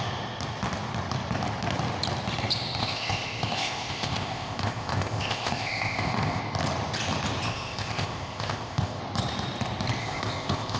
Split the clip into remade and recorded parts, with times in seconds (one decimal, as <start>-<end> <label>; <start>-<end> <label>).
0.0-2.8 recorded; 2.8-6.4 remade; 6.4-7.5 recorded; 7.5-9.0 remade; 9.0-10.0 recorded; 10.0-10.8 remade